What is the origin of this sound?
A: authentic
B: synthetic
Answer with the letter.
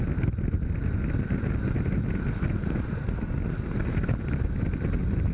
A